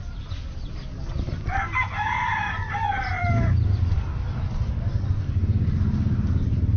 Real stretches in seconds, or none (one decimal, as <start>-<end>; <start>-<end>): 0.0-6.8